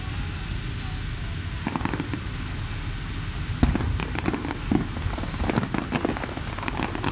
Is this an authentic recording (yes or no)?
yes